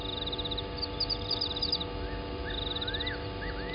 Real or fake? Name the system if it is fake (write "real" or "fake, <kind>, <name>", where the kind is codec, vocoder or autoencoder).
real